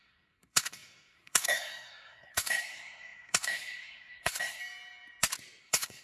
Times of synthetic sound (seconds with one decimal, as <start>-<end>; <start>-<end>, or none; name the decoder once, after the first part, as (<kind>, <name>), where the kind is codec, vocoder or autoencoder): 0.0-4.6 (codec, SNAC); 5.6-6.0